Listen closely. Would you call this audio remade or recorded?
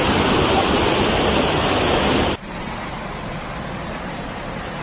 remade